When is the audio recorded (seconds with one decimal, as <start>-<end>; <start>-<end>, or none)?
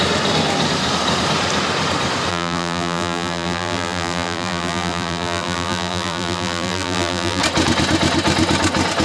0.0-2.3; 7.4-9.0